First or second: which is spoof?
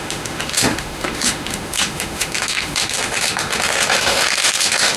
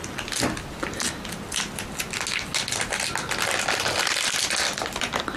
first